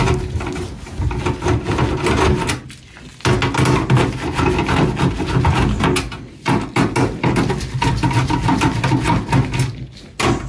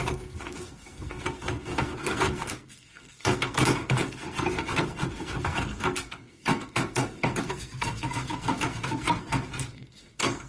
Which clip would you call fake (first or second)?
second